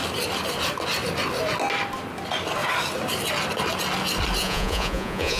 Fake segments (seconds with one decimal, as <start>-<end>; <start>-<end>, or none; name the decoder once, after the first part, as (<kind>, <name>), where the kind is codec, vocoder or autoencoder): 4.4-5.4 (vocoder, Vocos)